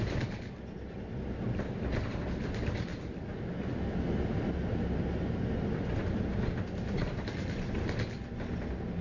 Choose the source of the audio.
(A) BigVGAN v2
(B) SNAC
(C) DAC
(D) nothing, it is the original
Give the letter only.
D